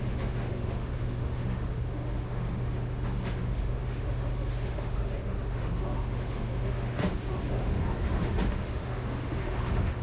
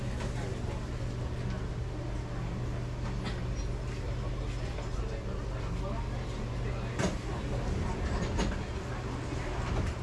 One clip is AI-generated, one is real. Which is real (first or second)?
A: second